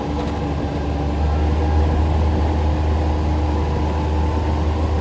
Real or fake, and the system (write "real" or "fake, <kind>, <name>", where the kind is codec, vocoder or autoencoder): real